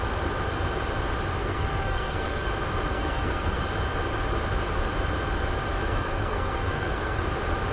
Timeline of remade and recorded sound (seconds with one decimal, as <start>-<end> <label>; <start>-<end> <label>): 0.0-1.4 recorded; 1.4-2.5 remade; 2.5-2.9 recorded; 2.9-3.6 remade; 3.6-5.8 recorded; 5.8-7.2 remade; 7.2-7.7 recorded